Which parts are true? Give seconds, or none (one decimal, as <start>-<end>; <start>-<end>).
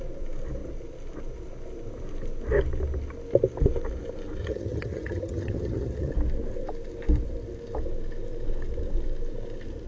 0.0-4.4; 6.1-9.9